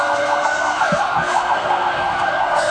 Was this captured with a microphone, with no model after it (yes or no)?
no